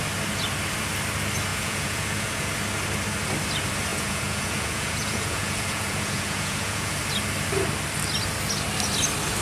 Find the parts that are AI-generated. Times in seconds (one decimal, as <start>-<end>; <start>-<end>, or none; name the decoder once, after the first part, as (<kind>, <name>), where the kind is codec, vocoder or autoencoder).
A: 1.5-2.5 (vocoder, Vocos); 3.9-6.9